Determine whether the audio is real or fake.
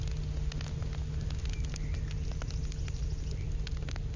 real